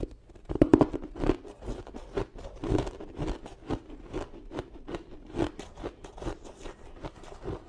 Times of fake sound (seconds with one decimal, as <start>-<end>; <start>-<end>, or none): none